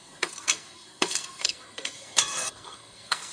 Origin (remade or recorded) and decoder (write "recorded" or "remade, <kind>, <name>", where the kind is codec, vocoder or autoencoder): remade, codec, SNAC